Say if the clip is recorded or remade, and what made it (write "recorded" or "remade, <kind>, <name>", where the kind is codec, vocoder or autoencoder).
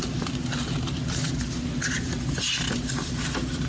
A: recorded